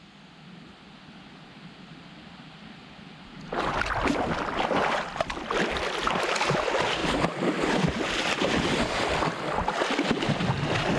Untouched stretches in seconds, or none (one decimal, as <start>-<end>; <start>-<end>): 0.0-11.0